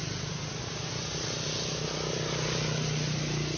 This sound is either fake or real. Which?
real